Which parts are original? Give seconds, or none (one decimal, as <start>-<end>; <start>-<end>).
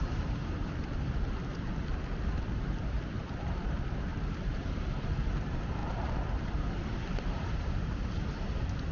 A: none